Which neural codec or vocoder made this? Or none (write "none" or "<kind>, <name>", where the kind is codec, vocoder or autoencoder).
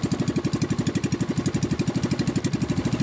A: none